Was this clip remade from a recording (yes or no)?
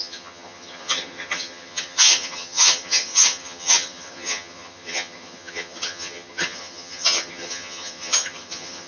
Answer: yes